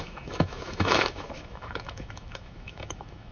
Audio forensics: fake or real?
fake